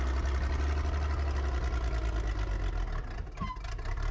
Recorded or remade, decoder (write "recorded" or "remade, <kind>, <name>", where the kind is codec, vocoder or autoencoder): recorded